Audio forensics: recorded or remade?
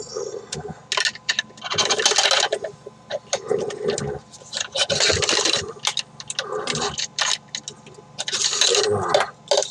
recorded